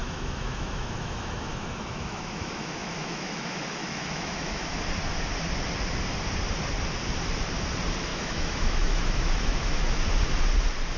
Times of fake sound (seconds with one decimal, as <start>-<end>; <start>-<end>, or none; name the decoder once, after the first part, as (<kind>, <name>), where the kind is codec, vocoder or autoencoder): 0.0-4.8 (autoencoder, DAC-VAE); 8.1-9.9